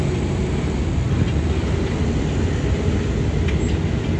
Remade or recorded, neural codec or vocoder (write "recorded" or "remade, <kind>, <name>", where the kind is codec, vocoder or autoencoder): recorded